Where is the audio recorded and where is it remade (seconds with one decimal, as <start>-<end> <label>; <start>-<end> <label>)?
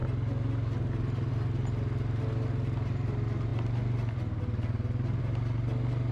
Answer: 0.0-6.1 recorded